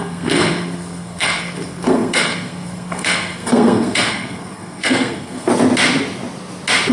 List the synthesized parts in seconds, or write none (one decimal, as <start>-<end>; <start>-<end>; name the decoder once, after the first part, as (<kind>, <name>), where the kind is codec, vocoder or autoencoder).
0.0-5.5 (codec, SNAC)